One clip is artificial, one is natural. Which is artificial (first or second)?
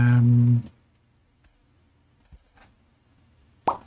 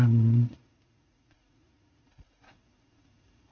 second